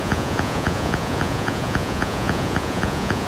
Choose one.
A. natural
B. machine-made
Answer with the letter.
B